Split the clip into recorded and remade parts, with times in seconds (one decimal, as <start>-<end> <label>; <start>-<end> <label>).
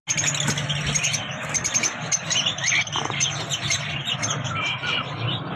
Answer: 0.0-3.4 recorded; 3.4-5.6 remade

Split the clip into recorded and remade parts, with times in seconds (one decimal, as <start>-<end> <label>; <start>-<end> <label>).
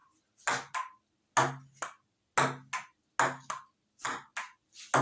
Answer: 0.0-5.0 recorded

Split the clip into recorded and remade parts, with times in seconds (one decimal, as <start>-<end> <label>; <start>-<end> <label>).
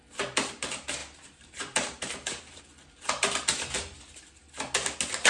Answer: 0.0-1.0 recorded; 1.0-2.6 remade; 2.6-5.3 recorded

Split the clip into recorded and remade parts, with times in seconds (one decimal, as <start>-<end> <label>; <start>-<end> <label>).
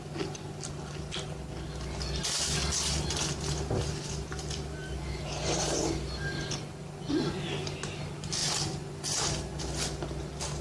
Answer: 0.0-4.8 recorded; 4.8-6.3 remade; 6.3-8.4 recorded; 8.4-9.6 remade; 9.6-10.6 recorded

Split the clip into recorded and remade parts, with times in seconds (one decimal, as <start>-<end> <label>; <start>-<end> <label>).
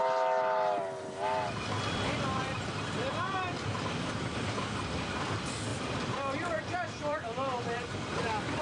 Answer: 0.0-5.7 recorded; 5.7-7.8 remade; 7.8-8.6 recorded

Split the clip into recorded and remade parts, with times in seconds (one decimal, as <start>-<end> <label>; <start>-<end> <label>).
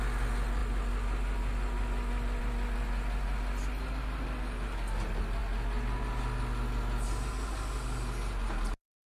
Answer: 0.0-9.1 recorded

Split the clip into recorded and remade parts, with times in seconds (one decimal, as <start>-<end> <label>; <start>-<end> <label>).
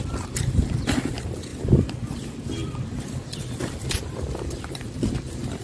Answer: 0.0-1.5 recorded; 1.5-4.9 remade; 4.9-5.6 recorded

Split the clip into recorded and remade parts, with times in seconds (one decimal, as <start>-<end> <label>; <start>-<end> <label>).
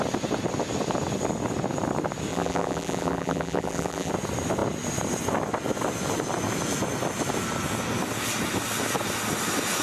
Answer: 0.0-2.3 recorded; 2.3-4.1 remade; 4.1-9.8 recorded